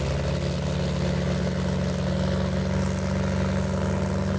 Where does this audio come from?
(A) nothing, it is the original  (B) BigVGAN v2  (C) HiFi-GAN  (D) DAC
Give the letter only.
A